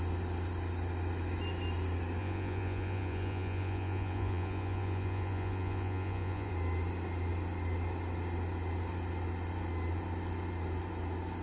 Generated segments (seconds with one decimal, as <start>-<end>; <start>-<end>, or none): 2.2-6.5